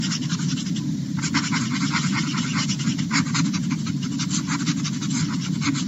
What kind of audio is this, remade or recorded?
recorded